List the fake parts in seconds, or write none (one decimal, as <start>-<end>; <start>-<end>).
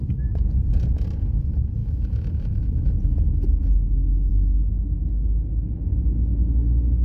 1.8-2.9; 4.3-5.8